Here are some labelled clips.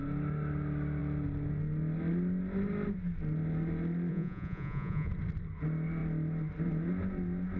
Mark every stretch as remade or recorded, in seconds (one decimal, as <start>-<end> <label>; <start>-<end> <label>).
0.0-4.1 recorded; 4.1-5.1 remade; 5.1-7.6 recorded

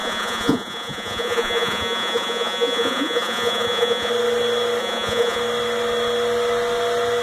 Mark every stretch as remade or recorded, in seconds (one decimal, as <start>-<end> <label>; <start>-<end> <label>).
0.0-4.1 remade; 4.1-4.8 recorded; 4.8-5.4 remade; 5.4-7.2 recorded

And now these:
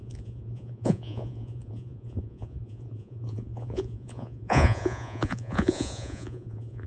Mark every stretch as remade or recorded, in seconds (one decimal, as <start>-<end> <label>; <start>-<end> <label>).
0.0-6.9 remade

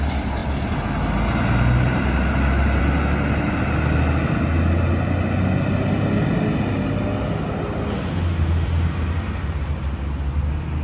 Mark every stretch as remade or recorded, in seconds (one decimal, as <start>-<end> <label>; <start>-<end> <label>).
0.0-10.8 recorded